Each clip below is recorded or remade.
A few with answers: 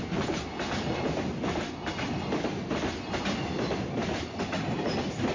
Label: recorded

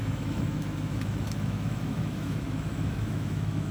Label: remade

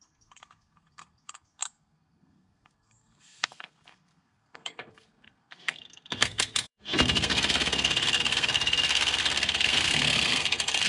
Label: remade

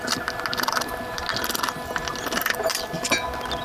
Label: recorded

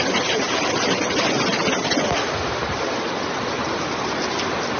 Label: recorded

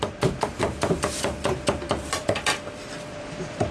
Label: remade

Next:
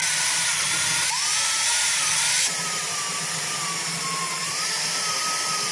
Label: remade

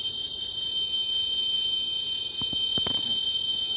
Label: recorded